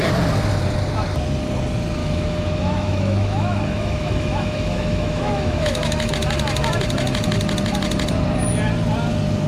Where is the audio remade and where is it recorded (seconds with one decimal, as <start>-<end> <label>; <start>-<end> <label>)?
0.0-2.0 recorded; 2.0-6.1 remade; 6.1-9.5 recorded